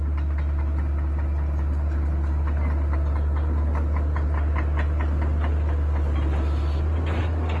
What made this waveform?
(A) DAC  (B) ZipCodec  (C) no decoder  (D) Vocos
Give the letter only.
C